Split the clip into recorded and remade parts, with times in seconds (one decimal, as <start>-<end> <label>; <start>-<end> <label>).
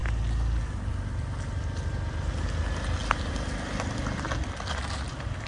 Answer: 0.0-5.5 recorded